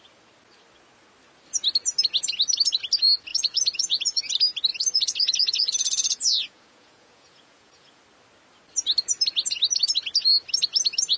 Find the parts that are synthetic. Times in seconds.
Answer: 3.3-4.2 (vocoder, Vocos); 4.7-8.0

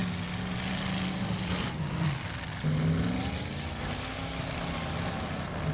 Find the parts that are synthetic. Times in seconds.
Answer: none